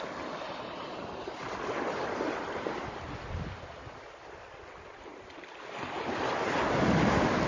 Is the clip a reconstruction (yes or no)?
no